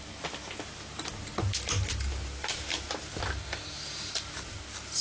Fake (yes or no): no